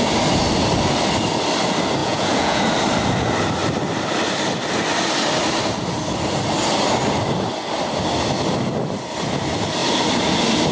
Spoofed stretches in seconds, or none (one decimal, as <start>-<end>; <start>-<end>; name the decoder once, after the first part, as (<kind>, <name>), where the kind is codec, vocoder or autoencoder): 2.0-2.6 (vocoder, Vocos)